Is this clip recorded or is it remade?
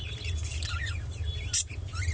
remade